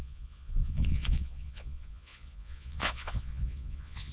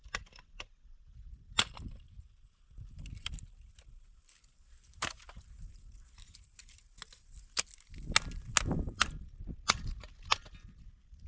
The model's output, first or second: first